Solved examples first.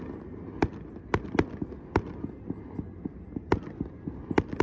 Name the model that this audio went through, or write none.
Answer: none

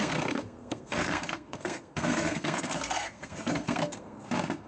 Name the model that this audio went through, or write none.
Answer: codec, SNAC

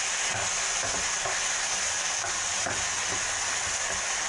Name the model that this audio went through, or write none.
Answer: none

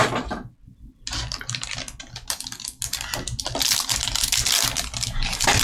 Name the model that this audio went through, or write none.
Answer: none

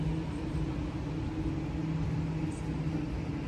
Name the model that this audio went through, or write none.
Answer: none